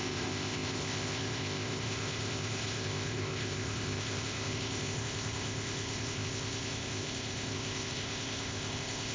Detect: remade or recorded remade